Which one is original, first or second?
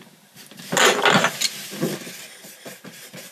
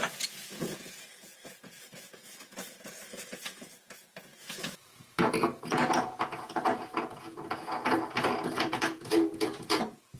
first